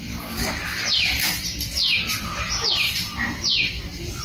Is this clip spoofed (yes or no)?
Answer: yes